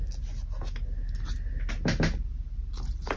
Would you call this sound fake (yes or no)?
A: no